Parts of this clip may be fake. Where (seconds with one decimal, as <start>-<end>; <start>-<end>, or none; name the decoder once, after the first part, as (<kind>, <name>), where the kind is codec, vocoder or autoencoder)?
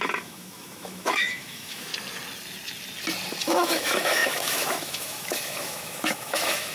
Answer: 0.0-1.9 (autoencoder, DAC-VAE); 3.4-6.7